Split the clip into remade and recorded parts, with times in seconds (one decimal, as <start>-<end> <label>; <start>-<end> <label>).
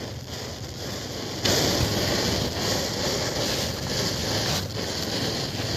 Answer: 0.0-5.8 recorded